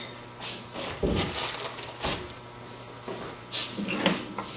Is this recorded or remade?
recorded